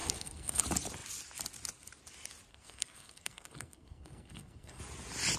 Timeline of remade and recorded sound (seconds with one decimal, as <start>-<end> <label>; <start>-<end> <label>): 0.0-0.6 remade; 0.6-2.5 recorded; 2.5-4.8 remade; 4.8-5.4 recorded